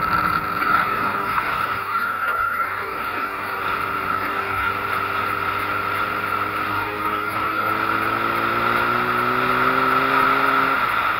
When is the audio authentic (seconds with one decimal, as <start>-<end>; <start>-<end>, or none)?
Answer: 0.0-0.6; 3.6-4.1; 4.7-6.7; 7.7-11.2